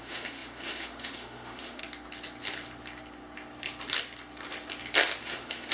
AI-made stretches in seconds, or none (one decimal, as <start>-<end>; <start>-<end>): 0.0-1.8; 5.2-5.7